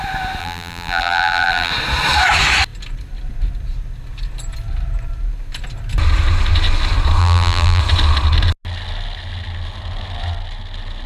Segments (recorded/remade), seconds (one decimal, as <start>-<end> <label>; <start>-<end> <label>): 0.0-0.4 recorded; 0.4-1.7 remade; 1.7-7.2 recorded; 7.2-7.8 remade; 7.8-11.1 recorded